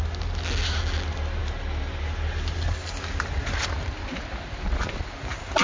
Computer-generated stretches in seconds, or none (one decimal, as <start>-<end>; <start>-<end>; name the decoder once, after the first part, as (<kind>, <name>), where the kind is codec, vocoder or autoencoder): none